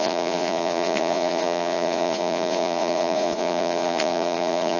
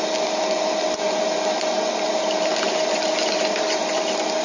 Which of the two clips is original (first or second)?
second